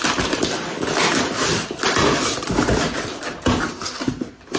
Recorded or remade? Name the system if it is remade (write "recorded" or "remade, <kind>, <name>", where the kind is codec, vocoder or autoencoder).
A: recorded